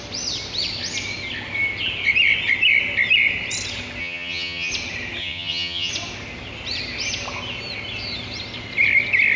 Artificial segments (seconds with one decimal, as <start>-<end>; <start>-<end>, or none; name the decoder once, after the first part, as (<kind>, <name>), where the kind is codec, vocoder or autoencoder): 4.0-4.7 (vocoder, HiFi-GAN); 5.2-5.9